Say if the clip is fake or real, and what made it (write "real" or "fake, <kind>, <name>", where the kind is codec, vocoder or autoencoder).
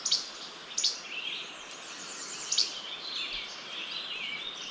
real